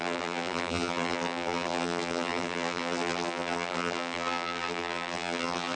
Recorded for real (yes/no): no